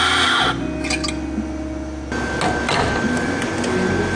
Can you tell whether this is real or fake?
real